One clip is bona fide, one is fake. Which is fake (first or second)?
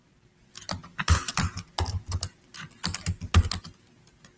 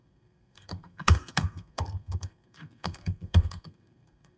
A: second